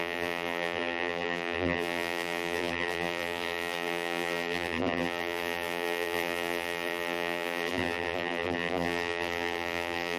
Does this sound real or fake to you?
fake